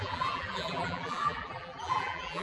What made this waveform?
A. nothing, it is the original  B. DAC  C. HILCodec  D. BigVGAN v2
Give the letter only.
D